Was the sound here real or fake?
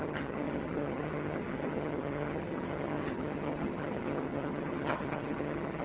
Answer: fake